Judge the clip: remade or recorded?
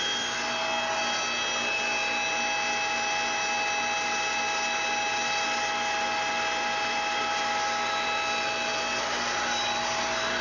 recorded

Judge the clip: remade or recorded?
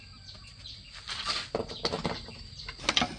recorded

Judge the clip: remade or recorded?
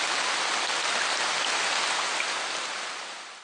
recorded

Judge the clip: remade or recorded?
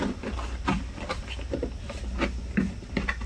recorded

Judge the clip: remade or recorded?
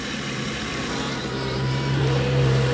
remade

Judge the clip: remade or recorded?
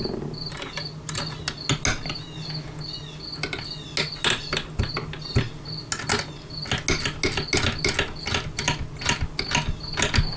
recorded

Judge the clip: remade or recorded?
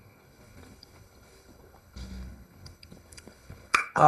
remade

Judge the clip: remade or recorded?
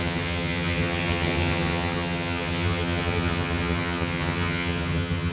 remade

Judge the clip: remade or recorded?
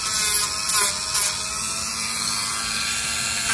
recorded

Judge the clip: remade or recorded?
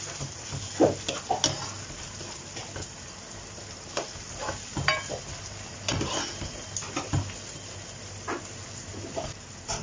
recorded